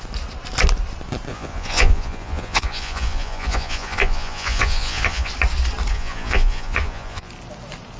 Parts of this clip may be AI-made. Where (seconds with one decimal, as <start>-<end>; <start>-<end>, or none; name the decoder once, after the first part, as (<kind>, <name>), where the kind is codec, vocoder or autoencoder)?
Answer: 1.3-5.3 (vocoder, Vocos); 5.9-7.3